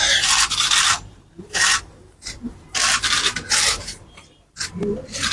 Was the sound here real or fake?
fake